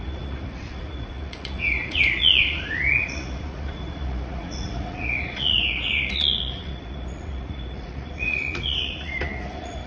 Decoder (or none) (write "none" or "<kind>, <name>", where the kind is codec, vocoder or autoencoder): vocoder, Vocos